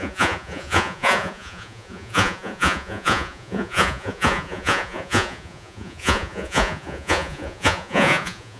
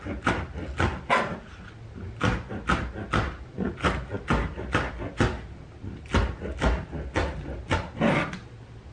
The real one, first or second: second